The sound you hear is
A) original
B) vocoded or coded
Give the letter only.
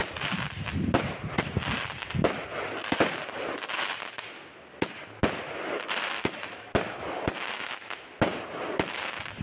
A